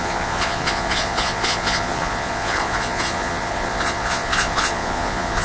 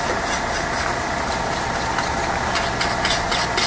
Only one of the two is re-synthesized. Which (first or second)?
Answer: first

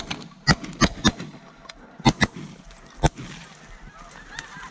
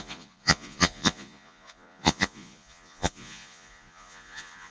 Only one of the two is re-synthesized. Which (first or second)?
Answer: second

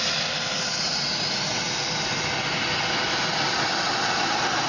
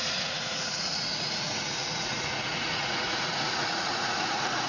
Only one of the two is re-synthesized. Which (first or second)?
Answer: second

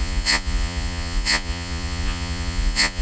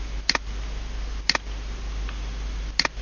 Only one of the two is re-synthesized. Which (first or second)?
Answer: first